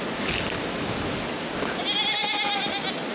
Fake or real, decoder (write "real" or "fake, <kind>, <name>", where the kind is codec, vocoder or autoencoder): real